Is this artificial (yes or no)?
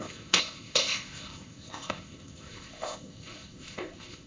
yes